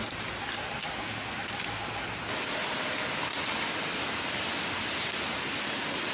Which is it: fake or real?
real